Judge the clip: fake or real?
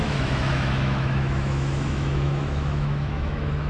fake